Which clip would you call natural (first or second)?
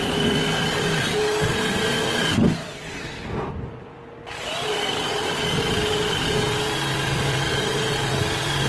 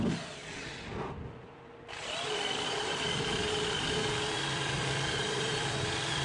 first